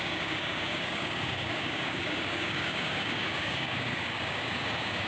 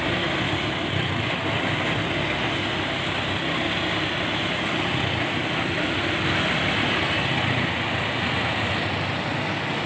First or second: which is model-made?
first